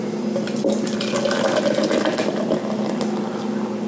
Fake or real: real